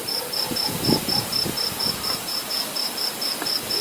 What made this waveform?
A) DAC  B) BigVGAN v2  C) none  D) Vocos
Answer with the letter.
C